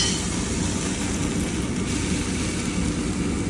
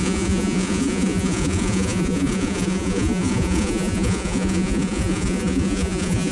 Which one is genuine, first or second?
first